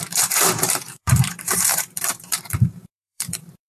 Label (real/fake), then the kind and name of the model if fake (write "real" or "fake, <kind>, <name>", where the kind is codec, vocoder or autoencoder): fake, vocoder, BigVGAN v2